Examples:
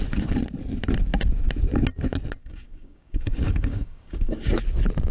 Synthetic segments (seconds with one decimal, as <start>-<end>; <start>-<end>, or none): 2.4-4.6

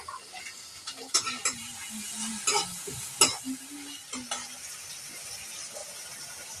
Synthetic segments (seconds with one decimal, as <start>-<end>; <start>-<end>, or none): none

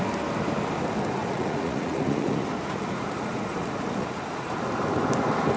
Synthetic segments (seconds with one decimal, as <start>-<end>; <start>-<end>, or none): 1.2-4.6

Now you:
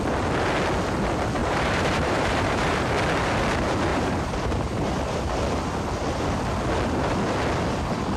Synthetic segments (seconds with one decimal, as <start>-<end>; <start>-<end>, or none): 1.4-2.9; 3.9-5.4

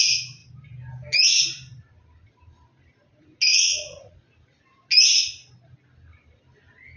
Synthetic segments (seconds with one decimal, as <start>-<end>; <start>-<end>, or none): 3.5-4.3

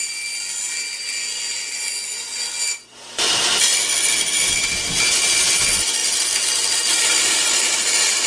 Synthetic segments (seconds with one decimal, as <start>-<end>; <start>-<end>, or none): none